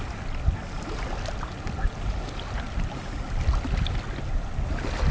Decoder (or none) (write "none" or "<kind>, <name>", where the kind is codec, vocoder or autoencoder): none